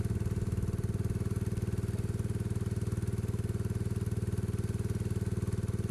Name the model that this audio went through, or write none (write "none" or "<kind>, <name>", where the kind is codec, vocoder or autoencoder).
none